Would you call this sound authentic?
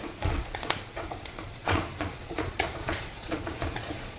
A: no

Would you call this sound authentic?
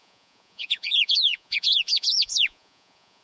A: no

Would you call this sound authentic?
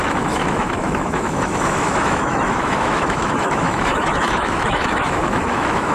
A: no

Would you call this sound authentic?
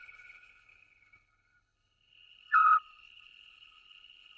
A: no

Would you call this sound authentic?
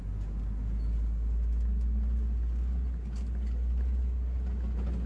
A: yes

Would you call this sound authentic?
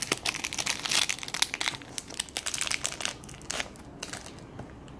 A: yes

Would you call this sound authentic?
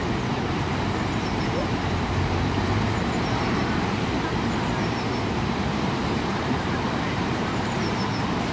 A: no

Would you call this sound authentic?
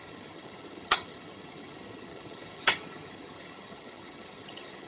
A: no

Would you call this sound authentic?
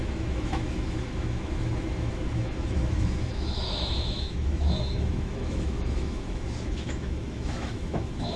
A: no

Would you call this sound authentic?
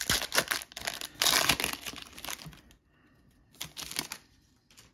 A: yes